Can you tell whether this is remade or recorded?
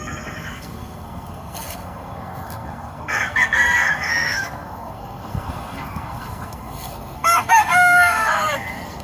remade